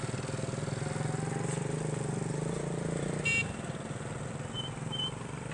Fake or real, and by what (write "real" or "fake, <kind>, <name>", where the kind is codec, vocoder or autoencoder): real